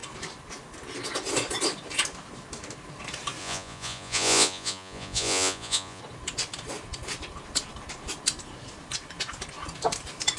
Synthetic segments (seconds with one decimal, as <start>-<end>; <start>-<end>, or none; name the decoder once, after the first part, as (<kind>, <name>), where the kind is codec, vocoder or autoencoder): 3.4-6.0 (vocoder, Vocos)